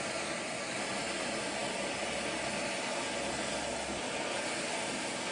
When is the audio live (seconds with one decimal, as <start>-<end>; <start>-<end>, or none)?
0.0-5.3